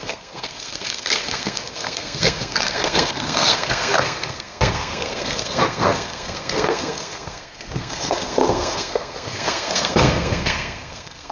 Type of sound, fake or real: fake